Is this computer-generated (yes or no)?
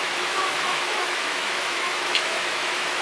yes